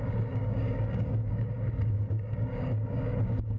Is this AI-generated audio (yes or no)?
yes